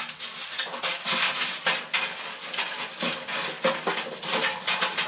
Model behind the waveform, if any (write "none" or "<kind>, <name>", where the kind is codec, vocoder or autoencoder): none